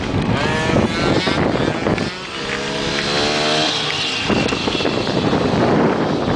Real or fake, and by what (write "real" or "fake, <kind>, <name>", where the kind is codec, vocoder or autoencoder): real